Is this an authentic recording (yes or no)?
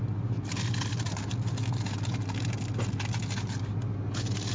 yes